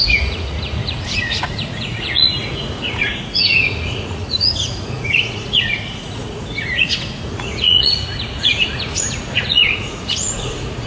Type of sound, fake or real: fake